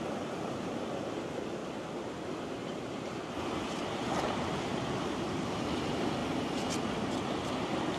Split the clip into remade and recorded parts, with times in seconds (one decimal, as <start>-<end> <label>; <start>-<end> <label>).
0.0-1.6 recorded; 1.6-2.2 remade; 2.2-2.6 recorded; 2.6-5.8 remade; 5.8-8.0 recorded